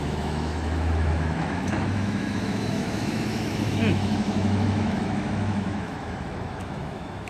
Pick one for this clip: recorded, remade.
remade